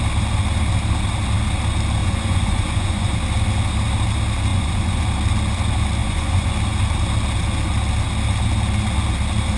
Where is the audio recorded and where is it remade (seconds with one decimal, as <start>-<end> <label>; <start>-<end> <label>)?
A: 0.0-2.0 recorded; 2.0-3.1 remade; 3.1-4.5 recorded; 4.5-5.0 remade; 5.0-6.0 recorded; 6.0-6.5 remade; 6.5-9.6 recorded